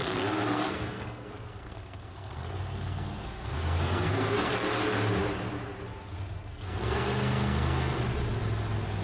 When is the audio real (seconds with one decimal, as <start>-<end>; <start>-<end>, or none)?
4.5-6.5; 8.0-9.0